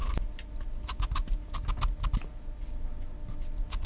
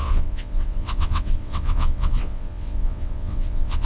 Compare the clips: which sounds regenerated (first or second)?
second